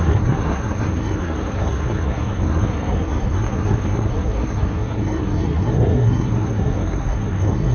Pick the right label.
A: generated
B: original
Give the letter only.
A